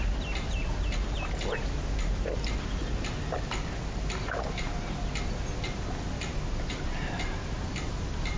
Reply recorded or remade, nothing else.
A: recorded